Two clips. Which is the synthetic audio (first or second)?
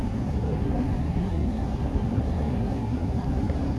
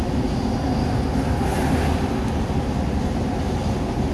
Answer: first